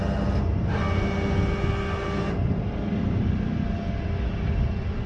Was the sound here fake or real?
real